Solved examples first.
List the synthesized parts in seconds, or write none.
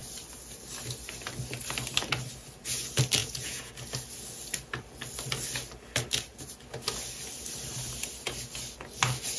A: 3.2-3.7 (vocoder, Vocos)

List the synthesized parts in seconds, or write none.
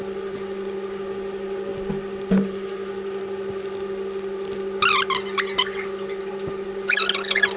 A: none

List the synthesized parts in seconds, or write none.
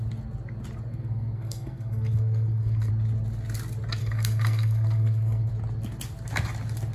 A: 0.9-2.9 (codec, SNAC); 4.0-5.5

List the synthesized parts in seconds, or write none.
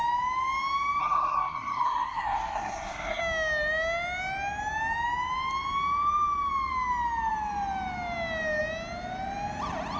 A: 1.0-3.2 (codec, SNAC)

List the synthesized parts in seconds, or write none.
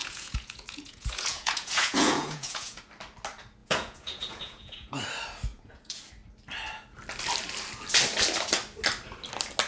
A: 0.0-2.8 (vocoder, Vocos); 3.6-5.0; 5.5-6.0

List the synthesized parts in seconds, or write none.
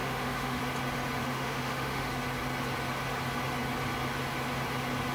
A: 0.0-0.6 (autoencoder, DAC-VAE); 1.2-2.1